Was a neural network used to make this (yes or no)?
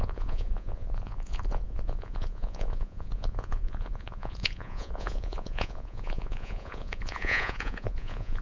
yes